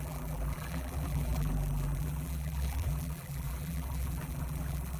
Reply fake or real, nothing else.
fake